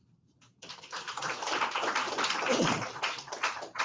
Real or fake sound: fake